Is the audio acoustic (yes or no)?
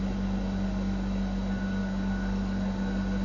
yes